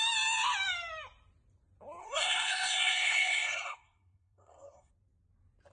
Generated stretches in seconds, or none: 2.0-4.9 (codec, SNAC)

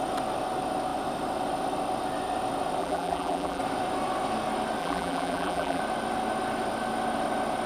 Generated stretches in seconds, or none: 2.8-3.6 (vocoder, BigVGAN v2); 4.8-5.8

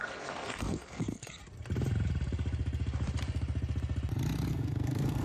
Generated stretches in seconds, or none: 0.0-1.4 (codec, SNAC); 4.5-5.2

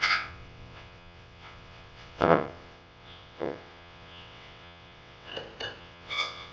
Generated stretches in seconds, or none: 0.0-5.3 (vocoder, WaveNeXt); 5.8-6.5

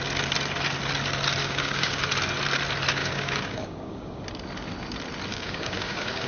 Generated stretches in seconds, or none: 1.4-2.0 (codec, DAC); 3.0-4.2; 5.3-6.3

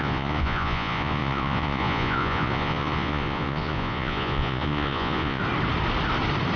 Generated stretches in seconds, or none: 0.0-5.4 (vocoder, Vocos)

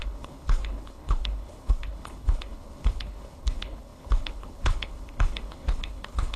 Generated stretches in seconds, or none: 0.0-6.4 (codec, HILCodec)

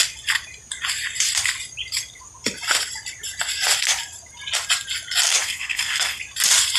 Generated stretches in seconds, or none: 5.4-6.2 (codec, SNAC)